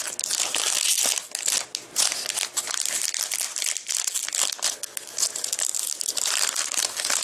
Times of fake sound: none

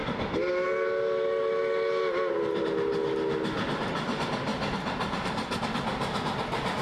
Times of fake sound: 4.5-5.6 (vocoder, BigVGAN v2)

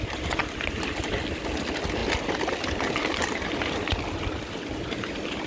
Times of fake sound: 0.4-1.4 (vocoder, BigVGAN v2); 3.2-3.9